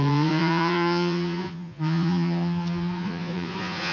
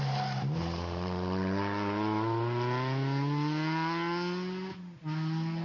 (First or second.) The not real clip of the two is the first